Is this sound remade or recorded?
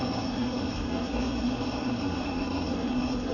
remade